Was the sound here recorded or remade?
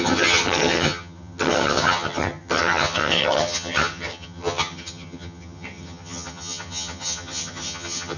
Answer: remade